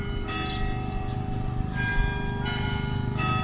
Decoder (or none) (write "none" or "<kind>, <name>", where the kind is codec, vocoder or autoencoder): none